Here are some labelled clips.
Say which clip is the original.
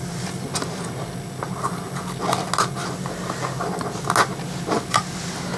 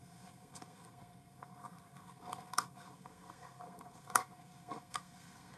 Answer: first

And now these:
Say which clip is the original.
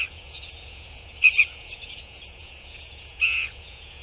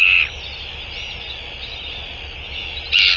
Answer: second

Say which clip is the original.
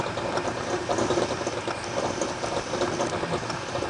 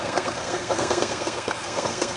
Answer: first